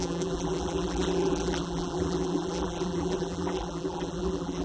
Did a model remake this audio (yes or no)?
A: yes